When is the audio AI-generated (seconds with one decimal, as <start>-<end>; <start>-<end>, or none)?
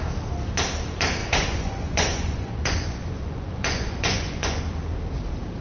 1.2-4.6